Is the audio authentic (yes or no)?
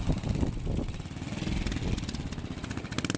yes